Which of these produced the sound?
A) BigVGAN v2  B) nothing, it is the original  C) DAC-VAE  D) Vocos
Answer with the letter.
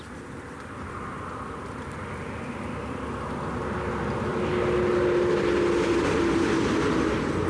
B